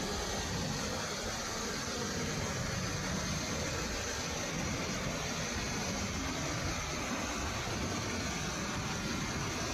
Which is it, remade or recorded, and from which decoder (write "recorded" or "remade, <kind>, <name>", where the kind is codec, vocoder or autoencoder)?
recorded